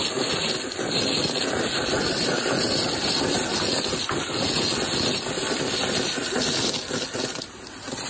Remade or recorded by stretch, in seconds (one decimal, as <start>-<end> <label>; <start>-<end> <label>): 0.0-8.1 recorded